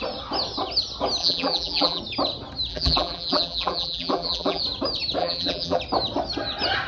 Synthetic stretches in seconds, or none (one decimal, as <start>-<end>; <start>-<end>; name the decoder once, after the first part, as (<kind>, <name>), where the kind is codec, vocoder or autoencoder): 1.2-2.0 (vocoder, BigVGAN v2); 2.7-4.6; 5.2-5.8